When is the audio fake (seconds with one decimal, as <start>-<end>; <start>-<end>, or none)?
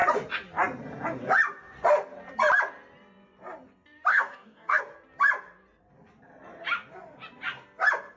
4.1-4.8